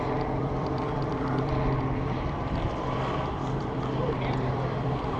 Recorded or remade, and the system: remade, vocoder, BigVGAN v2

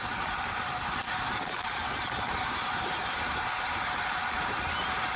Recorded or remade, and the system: remade, vocoder, BigVGAN v2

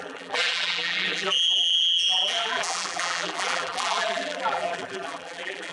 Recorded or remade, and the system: remade, vocoder, BigVGAN v2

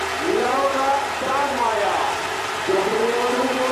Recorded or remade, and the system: recorded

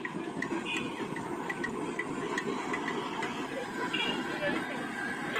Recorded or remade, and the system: recorded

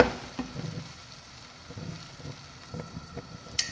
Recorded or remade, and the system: remade, vocoder, BigVGAN v2